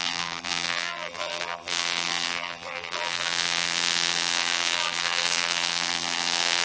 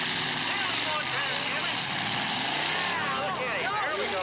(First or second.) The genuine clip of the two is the second